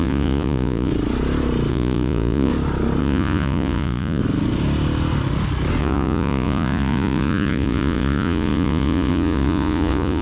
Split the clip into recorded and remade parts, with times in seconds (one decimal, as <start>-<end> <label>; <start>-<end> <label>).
0.0-0.9 remade; 0.9-1.7 recorded; 1.7-2.5 remade; 2.5-3.0 recorded; 3.0-4.2 remade; 4.2-5.8 recorded; 5.8-10.2 remade